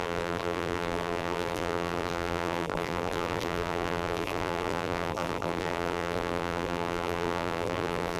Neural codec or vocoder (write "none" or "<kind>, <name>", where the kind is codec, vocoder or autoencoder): vocoder, BigVGAN v2